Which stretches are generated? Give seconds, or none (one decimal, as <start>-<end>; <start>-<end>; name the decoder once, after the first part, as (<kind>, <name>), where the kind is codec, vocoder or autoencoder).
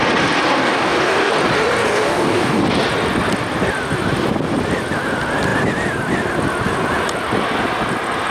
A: 0.6-1.3 (codec, DAC); 1.8-2.6